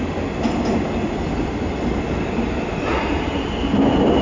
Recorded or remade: recorded